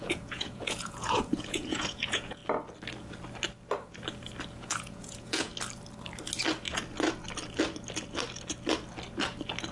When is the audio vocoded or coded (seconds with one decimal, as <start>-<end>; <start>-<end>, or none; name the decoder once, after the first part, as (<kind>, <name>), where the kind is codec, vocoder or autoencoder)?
0.0-2.4 (vocoder, Vocos); 4.5-5.5